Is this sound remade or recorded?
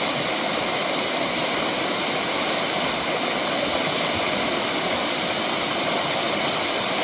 recorded